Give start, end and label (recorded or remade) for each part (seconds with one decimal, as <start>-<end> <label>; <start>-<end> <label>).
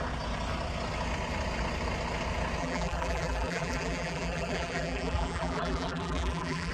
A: 0.0-2.6 recorded; 2.6-6.7 remade